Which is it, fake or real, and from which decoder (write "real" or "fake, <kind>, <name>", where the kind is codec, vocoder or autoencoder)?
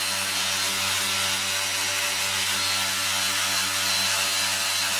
real